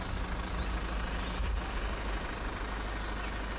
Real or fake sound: real